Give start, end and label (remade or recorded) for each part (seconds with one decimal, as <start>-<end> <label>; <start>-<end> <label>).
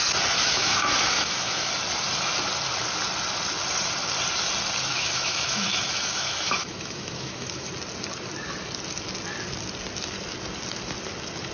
0.0-0.4 recorded; 0.4-1.7 remade; 1.7-4.9 recorded; 4.9-7.7 remade; 7.7-11.5 recorded